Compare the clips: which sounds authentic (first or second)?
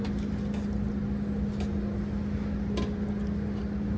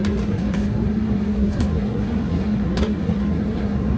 first